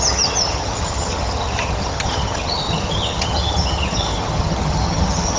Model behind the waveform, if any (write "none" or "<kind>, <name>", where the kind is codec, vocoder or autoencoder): vocoder, HiFi-GAN